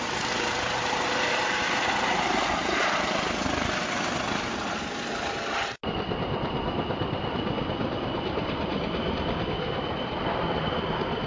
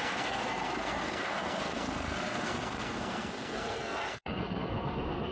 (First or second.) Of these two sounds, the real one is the first